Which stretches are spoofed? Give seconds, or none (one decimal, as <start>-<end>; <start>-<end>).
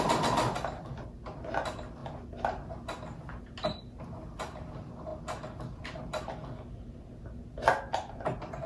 none